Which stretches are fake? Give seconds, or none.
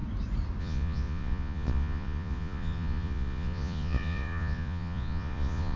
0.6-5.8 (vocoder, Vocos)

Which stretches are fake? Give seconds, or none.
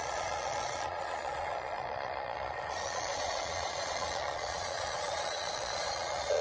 0.0-6.4 (vocoder, Vocos)